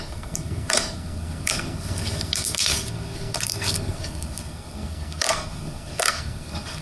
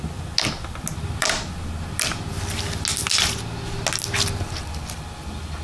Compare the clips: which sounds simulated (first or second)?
first